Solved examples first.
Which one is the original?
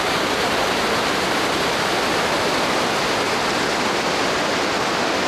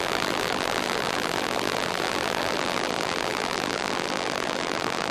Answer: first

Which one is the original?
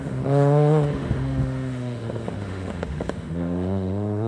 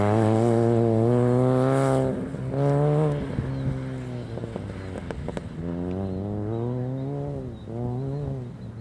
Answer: second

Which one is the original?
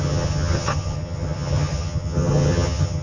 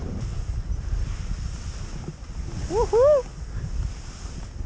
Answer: second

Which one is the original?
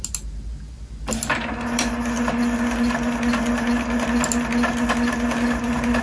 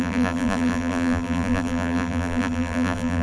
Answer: first